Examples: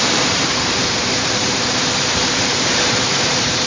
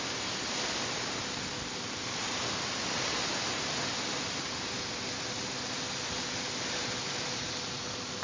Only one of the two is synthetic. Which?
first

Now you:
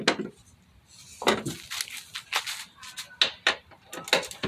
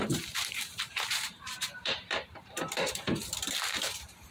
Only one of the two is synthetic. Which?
second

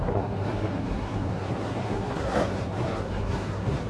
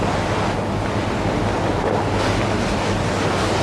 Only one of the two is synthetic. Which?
first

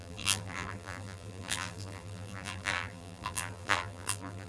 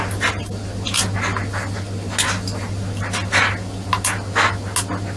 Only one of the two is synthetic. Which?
first